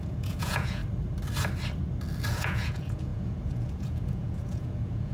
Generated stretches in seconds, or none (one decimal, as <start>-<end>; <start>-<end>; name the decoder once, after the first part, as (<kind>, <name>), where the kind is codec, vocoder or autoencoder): 0.0-0.8 (vocoder, Vocos); 2.3-5.1